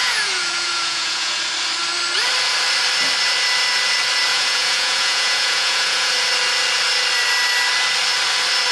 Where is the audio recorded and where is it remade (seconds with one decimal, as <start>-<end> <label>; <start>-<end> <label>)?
0.0-1.4 remade; 1.4-4.3 recorded; 4.3-6.1 remade; 6.1-8.7 recorded